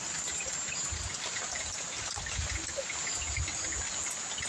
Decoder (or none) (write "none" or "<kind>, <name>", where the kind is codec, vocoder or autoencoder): none